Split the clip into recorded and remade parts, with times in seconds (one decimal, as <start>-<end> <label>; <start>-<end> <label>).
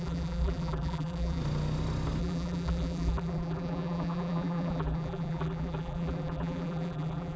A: 0.0-1.4 remade; 1.4-2.2 recorded; 2.2-7.4 remade